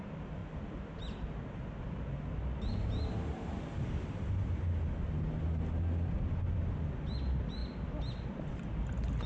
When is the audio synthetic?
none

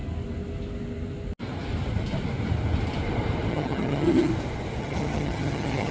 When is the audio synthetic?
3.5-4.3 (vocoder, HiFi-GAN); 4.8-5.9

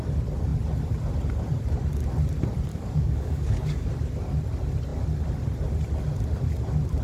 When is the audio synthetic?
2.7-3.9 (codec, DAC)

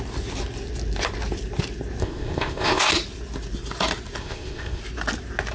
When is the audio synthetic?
2.0-2.9 (codec, ZipCodec); 4.2-4.8